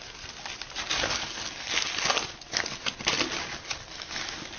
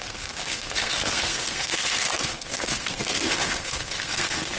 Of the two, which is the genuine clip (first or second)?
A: first